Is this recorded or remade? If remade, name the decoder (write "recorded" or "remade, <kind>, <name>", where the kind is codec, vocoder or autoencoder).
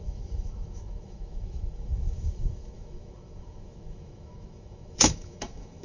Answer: remade, autoencoder, DAC-VAE